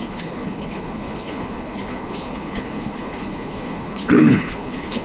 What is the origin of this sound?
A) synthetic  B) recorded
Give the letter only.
A